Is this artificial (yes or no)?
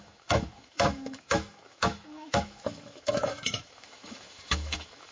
yes